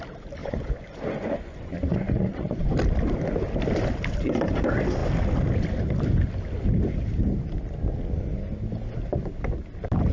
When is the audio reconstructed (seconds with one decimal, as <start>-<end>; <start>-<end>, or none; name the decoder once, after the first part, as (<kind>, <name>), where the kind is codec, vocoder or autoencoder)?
0.4-2.6 (vocoder, Vocos)